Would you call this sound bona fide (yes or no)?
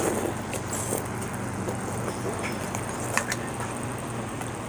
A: yes